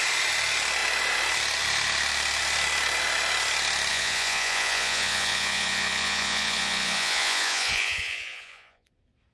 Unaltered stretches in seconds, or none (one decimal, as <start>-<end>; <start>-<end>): 0.0-3.9; 8.9-9.3